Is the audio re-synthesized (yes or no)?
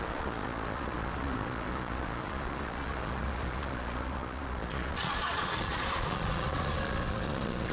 yes